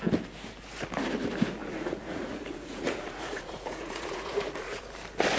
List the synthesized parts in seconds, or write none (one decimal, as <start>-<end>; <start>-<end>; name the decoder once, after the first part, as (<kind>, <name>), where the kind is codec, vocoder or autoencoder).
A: 1.6-4.8 (vocoder, Vocos)

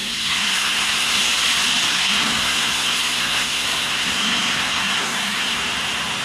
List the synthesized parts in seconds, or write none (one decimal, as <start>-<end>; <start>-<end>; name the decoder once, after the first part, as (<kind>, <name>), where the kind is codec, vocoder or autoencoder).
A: 0.0-1.3 (codec, SNAC); 1.9-5.6

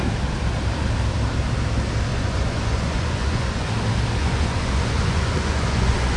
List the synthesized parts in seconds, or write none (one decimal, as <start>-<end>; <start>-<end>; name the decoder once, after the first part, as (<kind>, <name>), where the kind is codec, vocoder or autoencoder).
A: 2.1-3.7 (vocoder, Vocos); 4.2-6.2

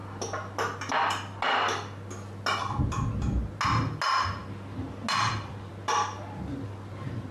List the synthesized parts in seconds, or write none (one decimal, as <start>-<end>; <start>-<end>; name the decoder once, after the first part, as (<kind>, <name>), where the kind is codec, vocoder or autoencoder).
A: none